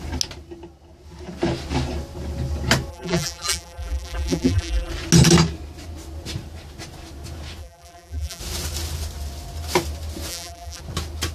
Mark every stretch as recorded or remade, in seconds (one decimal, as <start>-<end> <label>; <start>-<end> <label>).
0.0-2.9 recorded; 2.9-4.9 remade; 4.9-7.6 recorded; 7.6-8.4 remade; 8.4-10.3 recorded; 10.3-10.8 remade; 10.8-11.3 recorded